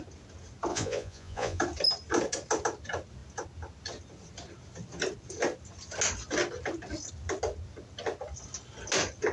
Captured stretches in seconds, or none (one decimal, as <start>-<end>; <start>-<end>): 0.0-0.7; 1.6-9.3